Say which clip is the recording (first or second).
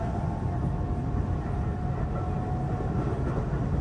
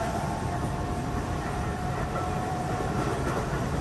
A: first